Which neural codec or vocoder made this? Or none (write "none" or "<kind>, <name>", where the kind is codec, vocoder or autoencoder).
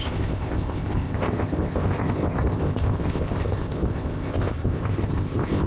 codec, ZipCodec